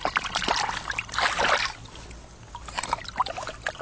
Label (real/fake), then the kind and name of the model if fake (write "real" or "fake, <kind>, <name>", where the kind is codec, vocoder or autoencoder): real